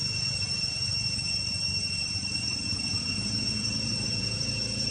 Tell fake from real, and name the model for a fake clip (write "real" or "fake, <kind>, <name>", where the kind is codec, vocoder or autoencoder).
fake, vocoder, BigVGAN v2